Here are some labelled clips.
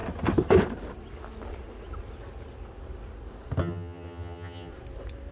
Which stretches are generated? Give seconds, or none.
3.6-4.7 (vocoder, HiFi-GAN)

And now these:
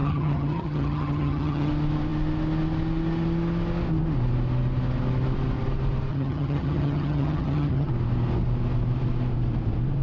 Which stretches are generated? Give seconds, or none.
0.0-1.7 (vocoder, HiFi-GAN); 6.1-7.9

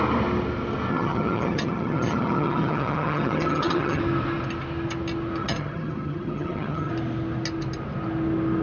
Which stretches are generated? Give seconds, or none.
0.9-4.0 (vocoder, HiFi-GAN); 5.4-6.9

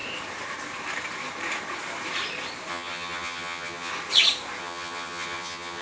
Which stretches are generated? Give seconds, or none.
2.7-3.9 (vocoder, HiFi-GAN); 4.6-5.8

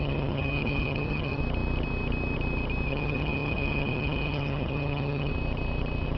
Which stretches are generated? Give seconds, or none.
0.0-1.4 (vocoder, HiFi-GAN); 2.9-5.3